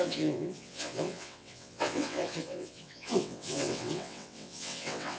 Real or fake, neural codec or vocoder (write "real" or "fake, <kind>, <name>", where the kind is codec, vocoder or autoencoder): fake, vocoder, WaveNeXt